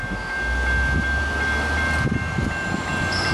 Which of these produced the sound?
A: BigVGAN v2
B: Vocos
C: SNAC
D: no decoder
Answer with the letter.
D